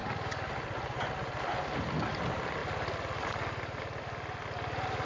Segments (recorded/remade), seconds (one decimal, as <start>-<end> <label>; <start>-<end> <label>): 0.0-0.5 remade; 0.5-5.0 recorded

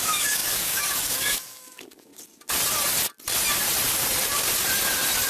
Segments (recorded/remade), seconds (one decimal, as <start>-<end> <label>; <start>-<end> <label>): 0.0-2.1 remade; 2.1-5.3 recorded

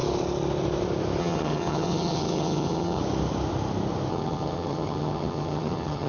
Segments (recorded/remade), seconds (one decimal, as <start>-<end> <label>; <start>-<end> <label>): 0.0-1.2 recorded; 1.2-3.0 remade; 3.0-4.1 recorded; 4.1-6.1 remade